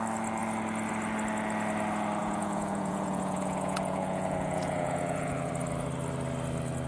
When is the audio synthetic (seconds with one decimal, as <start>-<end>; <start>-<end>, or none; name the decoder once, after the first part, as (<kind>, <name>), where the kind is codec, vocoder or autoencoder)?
2.2-5.5 (vocoder, Vocos)